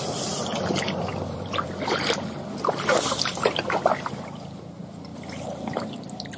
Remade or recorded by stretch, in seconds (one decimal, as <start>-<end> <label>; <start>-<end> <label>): 0.0-1.1 recorded; 1.1-3.6 remade; 3.6-5.1 recorded; 5.1-5.9 remade; 5.9-6.4 recorded